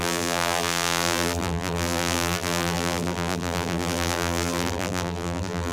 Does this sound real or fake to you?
fake